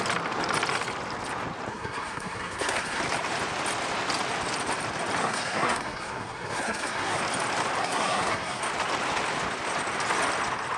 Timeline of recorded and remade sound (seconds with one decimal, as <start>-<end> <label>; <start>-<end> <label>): 0.0-1.7 recorded; 1.7-3.0 remade; 3.0-5.2 recorded; 5.2-7.2 remade; 7.2-7.8 recorded; 7.8-8.6 remade; 8.6-10.8 recorded